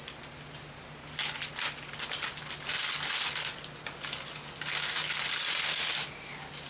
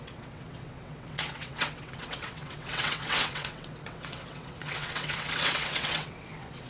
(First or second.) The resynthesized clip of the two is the second